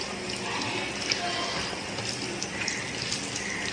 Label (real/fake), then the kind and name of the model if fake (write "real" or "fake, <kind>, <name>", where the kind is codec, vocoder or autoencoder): real